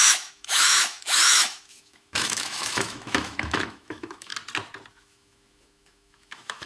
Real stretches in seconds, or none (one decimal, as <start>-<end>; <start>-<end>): 4.3-4.9